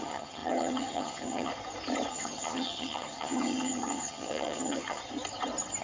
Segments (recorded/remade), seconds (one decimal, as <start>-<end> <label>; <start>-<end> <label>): 0.0-1.5 remade; 1.5-2.1 recorded; 2.1-5.0 remade; 5.0-5.8 recorded